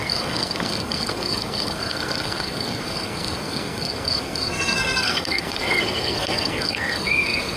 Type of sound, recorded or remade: remade